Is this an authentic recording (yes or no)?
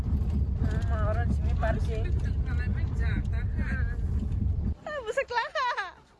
yes